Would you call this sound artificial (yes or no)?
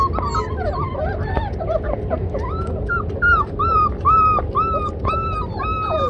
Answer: no